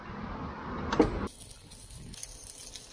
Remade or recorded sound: recorded